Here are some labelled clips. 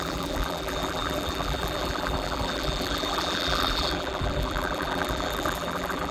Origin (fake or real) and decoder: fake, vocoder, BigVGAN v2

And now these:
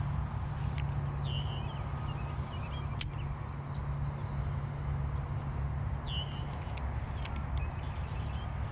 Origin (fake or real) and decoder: real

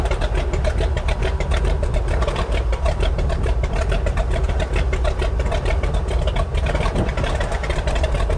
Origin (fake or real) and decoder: fake, vocoder, BigVGAN v2